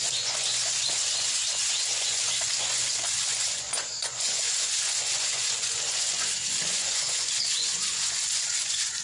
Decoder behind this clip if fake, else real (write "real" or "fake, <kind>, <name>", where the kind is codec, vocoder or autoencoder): fake, vocoder, Vocos